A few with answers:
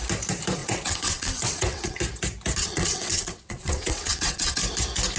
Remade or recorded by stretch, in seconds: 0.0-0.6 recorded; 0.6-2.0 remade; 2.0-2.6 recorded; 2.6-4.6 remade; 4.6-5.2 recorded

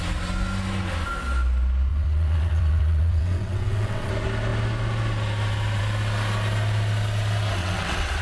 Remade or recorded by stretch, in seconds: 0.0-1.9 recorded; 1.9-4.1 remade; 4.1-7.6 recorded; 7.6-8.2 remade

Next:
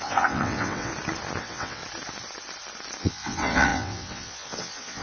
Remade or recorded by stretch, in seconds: 0.0-0.9 remade; 0.9-1.4 recorded; 1.4-1.8 remade; 1.8-3.0 recorded; 3.0-5.0 remade